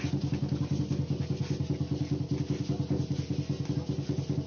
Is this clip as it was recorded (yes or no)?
yes